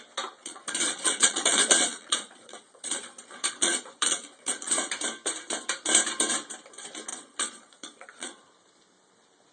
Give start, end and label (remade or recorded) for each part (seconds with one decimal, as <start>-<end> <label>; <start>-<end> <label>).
0.0-0.4 recorded; 0.4-4.9 remade; 4.9-7.1 recorded; 7.1-8.4 remade; 8.4-9.5 recorded